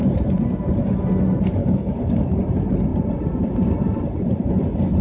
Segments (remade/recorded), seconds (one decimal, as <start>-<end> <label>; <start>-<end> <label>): 0.0-1.6 recorded; 1.6-2.4 remade; 2.4-5.0 recorded